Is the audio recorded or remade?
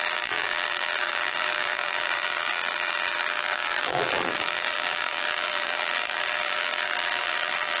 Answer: remade